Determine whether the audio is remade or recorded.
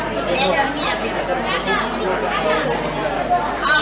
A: recorded